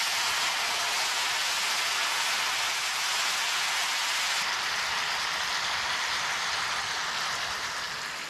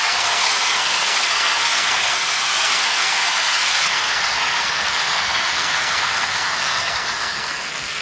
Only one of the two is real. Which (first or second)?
first